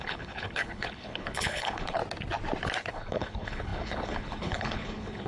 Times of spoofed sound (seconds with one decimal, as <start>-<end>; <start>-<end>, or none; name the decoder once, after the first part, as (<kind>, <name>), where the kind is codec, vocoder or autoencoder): 0.0-2.0 (codec, HILCodec); 2.9-5.3